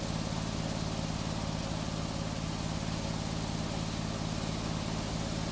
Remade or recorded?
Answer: recorded